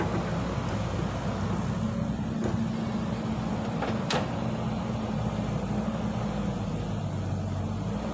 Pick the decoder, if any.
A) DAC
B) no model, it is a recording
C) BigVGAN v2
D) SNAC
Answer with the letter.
B